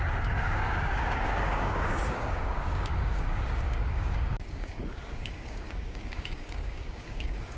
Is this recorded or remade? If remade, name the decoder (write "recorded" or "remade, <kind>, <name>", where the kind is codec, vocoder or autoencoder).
remade, codec, DAC